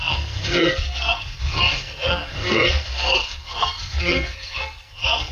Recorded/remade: remade